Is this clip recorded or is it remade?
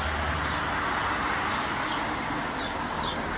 recorded